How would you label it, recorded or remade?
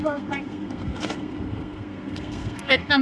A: remade